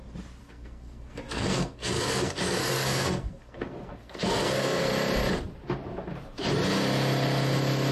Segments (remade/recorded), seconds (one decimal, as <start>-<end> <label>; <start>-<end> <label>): 0.0-0.4 recorded; 0.4-4.9 remade; 4.9-7.9 recorded